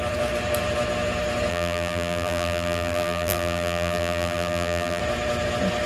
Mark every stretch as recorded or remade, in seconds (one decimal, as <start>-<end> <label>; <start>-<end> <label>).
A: 0.0-1.5 recorded; 1.5-5.0 remade; 5.0-5.9 recorded

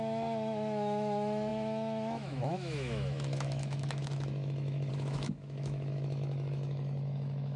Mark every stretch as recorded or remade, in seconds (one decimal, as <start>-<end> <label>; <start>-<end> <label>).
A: 0.0-7.6 remade